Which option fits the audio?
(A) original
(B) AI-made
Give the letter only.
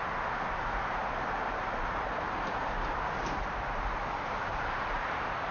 B